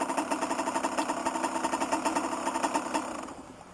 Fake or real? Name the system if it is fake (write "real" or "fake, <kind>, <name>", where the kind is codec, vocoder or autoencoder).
real